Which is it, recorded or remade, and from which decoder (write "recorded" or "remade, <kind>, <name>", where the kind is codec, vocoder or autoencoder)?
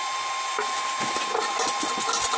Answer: recorded